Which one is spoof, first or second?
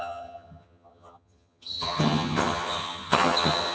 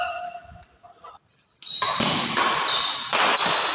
first